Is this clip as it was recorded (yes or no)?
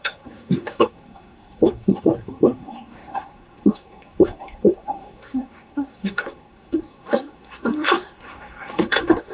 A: no